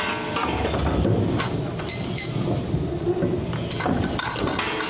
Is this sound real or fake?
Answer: real